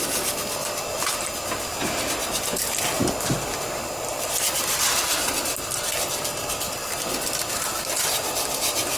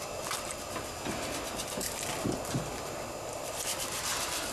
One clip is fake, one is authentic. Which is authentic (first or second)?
first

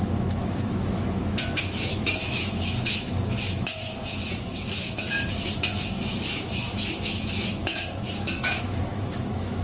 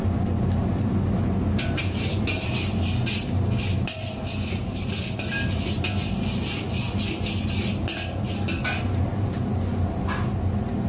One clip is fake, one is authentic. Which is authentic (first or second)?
second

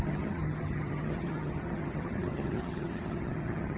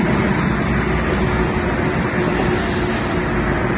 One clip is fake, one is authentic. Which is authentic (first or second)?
second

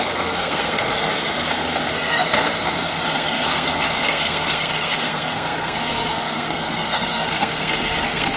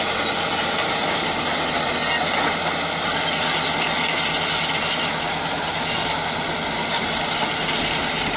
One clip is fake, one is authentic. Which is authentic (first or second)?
second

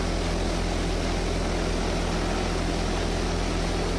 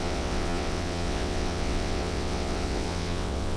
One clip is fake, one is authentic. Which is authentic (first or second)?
first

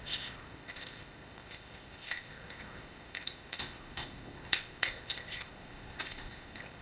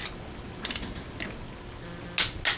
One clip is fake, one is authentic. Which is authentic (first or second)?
second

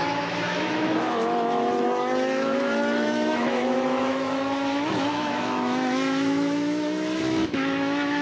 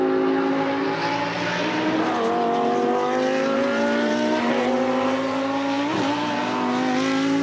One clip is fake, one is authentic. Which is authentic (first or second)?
second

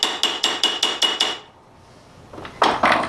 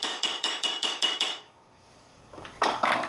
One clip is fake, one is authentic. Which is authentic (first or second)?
first